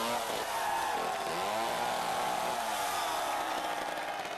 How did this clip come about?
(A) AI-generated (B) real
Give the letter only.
B